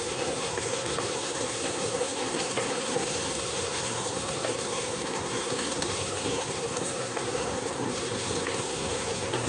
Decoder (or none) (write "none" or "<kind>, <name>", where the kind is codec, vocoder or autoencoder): codec, SNAC